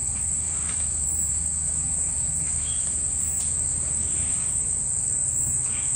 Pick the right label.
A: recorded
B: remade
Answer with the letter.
B